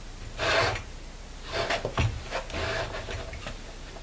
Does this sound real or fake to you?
real